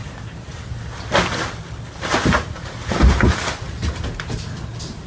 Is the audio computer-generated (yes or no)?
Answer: no